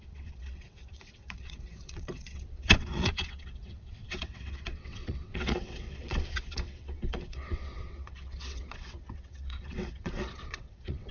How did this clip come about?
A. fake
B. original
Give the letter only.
A